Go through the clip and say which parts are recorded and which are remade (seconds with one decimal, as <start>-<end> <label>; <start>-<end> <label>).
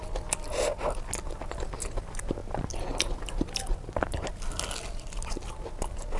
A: 0.0-6.2 recorded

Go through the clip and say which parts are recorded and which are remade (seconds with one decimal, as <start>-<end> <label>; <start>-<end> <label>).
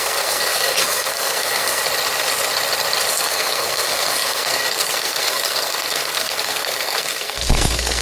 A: 0.0-1.8 remade; 1.8-3.1 recorded; 3.1-8.0 remade